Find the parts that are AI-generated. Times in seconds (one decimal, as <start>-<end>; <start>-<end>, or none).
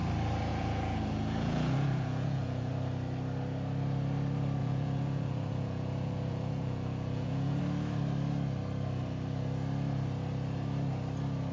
0.5-2.7; 4.6-7.6